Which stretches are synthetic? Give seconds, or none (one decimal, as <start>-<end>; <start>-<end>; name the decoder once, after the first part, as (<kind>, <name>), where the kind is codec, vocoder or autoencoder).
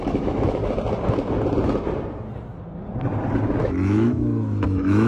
0.0-0.6 (autoencoder, DAC-VAE); 3.6-5.1